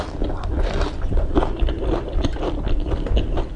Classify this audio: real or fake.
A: real